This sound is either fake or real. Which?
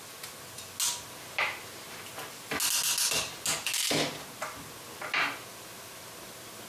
real